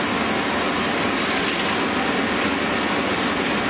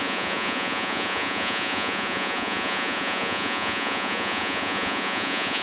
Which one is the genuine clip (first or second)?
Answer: first